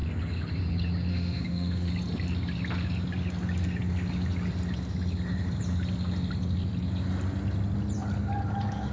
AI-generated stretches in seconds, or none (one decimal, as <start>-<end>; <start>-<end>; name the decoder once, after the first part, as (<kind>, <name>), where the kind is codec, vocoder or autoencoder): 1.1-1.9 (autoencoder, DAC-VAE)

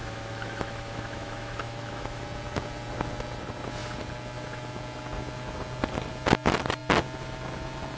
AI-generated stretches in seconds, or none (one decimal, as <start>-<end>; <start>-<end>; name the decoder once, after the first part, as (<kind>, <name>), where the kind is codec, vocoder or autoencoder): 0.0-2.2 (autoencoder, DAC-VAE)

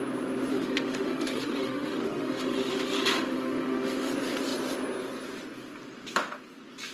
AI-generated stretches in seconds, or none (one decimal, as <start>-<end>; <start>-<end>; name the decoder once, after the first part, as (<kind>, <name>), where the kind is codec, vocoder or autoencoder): 0.5-4.1 (autoencoder, DAC-VAE)

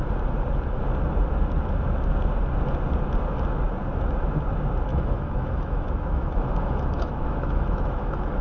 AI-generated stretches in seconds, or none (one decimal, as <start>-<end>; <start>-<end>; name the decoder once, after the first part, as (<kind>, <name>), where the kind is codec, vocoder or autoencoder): 4.9-8.4 (autoencoder, DAC-VAE)